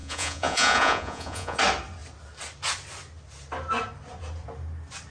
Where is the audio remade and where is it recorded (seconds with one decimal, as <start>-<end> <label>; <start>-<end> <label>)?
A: 0.0-1.6 remade; 1.6-5.1 recorded